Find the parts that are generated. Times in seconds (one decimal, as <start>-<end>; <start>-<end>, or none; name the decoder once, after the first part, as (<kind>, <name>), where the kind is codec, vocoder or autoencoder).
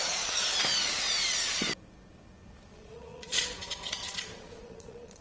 0.0-0.5 (vocoder, Vocos); 2.7-5.2